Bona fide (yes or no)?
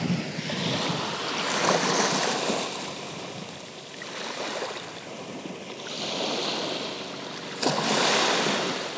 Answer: yes